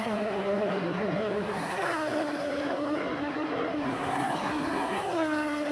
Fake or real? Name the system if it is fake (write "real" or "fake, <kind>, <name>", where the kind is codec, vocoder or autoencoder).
fake, codec, SNAC